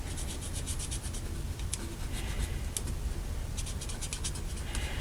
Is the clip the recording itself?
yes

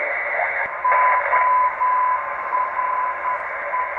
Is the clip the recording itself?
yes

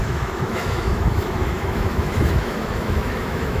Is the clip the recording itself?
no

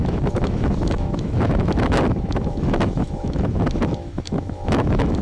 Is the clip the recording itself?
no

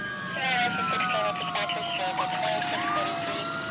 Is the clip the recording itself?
yes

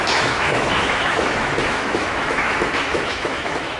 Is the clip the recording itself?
no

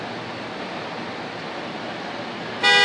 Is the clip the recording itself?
yes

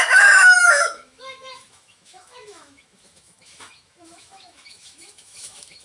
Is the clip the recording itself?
no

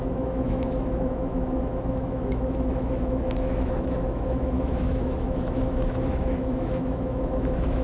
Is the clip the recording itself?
no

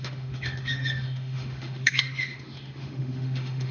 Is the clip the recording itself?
no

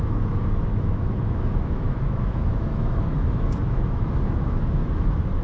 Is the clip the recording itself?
no